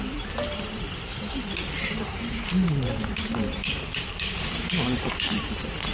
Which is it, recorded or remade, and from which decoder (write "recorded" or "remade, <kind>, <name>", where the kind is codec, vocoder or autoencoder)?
remade, vocoder, BigVGAN v2